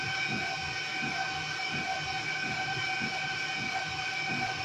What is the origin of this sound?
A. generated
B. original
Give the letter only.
B